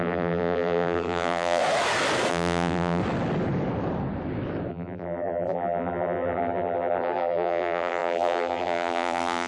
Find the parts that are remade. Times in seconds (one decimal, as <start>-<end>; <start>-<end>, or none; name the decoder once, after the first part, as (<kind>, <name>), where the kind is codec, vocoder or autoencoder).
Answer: 0.0-1.6 (vocoder, BigVGAN v2); 2.3-3.0; 4.7-9.5